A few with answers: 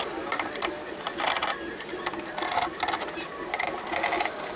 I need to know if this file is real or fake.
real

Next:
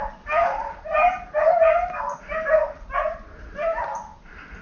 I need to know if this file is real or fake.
real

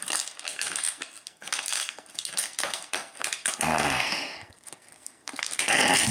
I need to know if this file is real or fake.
fake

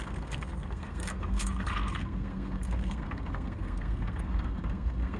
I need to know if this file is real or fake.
fake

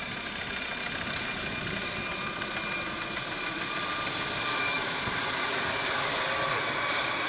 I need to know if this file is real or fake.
real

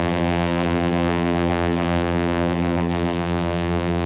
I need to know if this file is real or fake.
fake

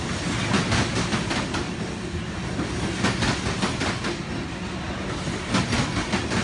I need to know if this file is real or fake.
real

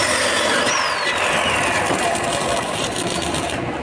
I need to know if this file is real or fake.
real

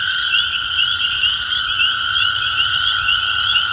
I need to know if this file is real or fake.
fake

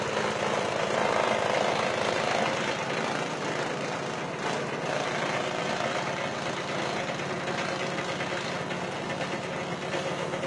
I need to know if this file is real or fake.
real